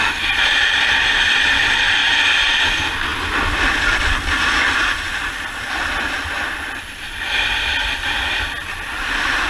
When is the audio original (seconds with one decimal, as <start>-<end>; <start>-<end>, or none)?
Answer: 0.0-9.5